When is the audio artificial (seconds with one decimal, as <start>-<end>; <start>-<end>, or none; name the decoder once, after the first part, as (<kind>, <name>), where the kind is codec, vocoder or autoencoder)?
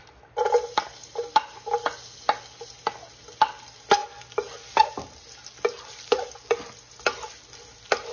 none